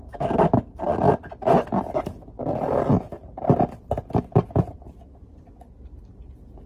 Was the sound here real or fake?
real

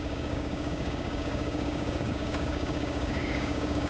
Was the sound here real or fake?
fake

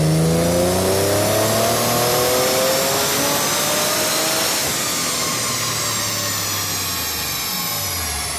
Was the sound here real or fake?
real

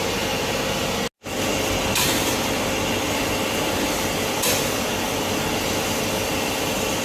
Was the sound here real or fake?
real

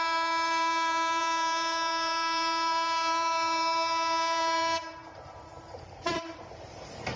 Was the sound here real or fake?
fake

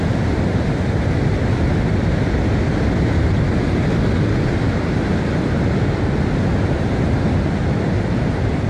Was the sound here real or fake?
real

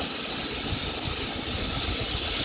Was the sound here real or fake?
real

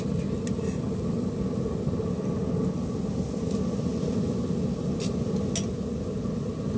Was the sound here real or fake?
real